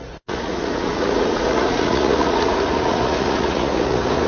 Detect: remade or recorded remade